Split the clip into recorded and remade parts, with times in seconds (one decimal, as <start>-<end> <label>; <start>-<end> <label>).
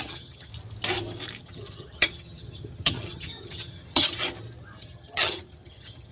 0.0-0.5 remade; 0.5-1.4 recorded; 1.4-4.2 remade; 4.2-4.8 recorded; 4.8-6.1 remade